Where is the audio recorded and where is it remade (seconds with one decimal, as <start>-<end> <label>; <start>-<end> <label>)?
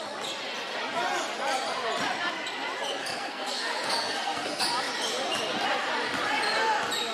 0.0-3.0 recorded; 3.0-4.6 remade; 4.6-7.1 recorded